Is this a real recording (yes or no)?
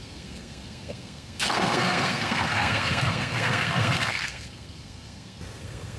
no